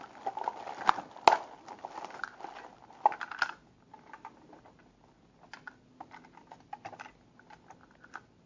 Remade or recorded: recorded